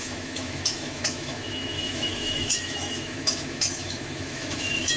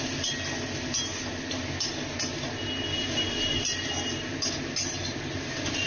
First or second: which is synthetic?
first